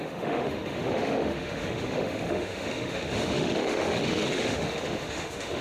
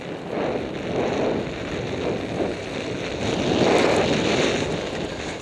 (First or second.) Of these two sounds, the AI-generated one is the first